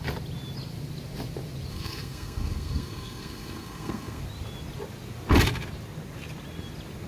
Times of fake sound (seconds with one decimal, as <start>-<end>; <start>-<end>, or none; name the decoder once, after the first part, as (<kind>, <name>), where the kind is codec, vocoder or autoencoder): 1.7-4.2 (codec, SNAC)